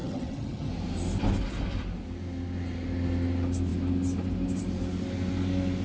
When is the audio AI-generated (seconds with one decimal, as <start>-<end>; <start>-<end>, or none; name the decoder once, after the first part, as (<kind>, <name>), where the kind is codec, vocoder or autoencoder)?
0.0-0.7 (vocoder, HiFi-GAN)